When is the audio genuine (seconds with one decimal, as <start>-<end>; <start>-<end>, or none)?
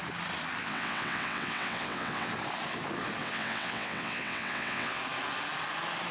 0.0-0.6; 2.3-3.2; 5.0-6.1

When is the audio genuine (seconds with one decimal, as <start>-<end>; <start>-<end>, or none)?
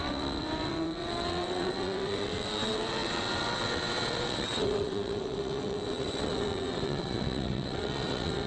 none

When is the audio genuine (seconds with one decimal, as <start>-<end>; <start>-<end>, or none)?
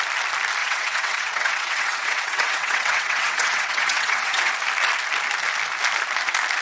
0.0-0.6; 4.5-6.6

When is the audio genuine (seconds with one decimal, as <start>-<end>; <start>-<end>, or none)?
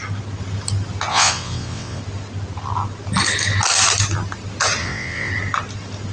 0.0-1.1; 2.0-4.8; 5.3-6.1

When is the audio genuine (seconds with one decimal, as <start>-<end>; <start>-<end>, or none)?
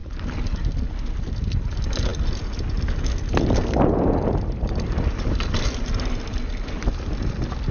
0.0-7.7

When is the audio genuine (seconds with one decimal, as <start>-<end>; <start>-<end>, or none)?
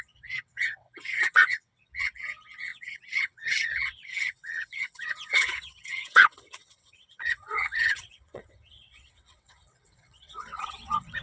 none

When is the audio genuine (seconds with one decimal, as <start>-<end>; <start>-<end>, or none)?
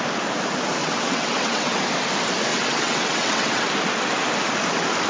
0.0-0.8; 1.8-2.5; 3.7-5.1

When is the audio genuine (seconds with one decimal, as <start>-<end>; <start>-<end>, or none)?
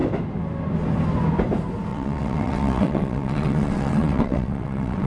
0.0-1.9